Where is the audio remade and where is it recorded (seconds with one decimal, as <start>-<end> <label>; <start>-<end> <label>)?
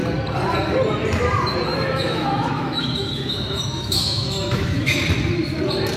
0.0-1.7 recorded; 1.7-5.0 remade; 5.0-6.0 recorded